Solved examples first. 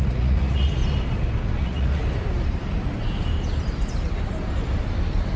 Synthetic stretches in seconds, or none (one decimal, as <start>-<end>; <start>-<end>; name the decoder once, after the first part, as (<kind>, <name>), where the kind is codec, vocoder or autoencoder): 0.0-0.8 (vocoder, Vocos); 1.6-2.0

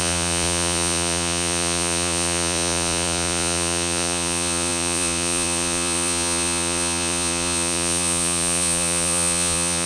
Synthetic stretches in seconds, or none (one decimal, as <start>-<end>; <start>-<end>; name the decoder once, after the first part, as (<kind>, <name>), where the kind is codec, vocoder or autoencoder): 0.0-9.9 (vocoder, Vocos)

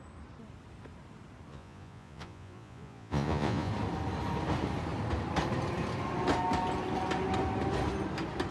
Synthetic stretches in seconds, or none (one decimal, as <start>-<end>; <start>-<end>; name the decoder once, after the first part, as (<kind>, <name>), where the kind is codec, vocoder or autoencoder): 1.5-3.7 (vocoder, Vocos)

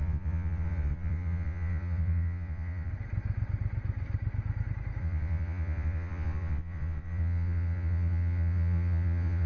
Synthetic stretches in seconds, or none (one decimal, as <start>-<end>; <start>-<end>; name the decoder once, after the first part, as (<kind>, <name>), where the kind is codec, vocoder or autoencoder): 0.0-2.9 (vocoder, Vocos); 5.0-9.5

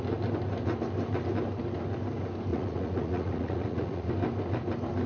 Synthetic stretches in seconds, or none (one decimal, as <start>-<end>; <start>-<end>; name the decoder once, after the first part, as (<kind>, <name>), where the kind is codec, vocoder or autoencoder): 2.5-4.1 (vocoder, Vocos)

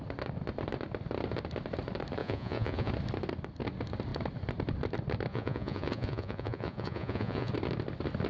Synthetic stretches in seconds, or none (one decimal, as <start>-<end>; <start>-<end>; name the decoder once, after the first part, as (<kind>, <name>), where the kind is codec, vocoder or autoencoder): 2.2-2.9 (vocoder, Vocos); 5.3-7.5